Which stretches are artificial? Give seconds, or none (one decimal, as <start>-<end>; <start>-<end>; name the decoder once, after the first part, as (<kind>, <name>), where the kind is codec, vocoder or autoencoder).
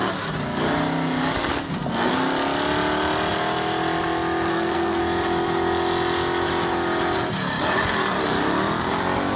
1.5-2.1 (codec, SNAC); 4.5-5.0